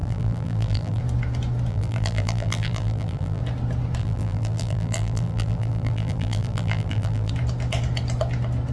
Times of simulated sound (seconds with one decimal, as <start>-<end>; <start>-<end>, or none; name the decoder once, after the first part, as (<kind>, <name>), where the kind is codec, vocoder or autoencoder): 0.0-1.0 (vocoder, BigVGAN v2); 1.7-3.4; 4.0-7.3